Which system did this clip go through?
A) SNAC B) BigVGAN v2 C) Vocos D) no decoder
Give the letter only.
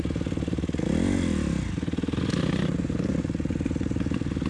D